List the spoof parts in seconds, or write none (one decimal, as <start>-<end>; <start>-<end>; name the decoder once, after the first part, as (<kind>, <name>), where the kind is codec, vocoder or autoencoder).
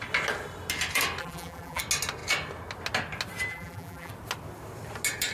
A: 1.2-1.8 (vocoder, BigVGAN v2); 3.5-4.1